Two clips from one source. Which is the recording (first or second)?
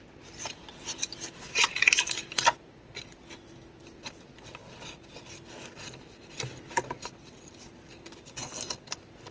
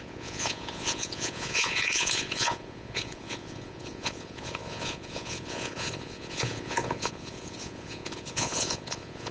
first